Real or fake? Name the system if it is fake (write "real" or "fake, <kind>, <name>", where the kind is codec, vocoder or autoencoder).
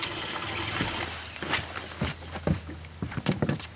real